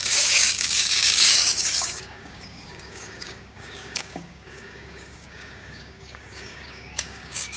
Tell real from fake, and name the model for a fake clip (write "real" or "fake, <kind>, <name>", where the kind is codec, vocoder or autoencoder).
fake, codec, DAC